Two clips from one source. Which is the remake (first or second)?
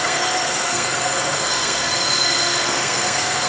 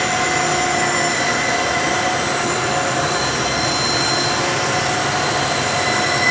first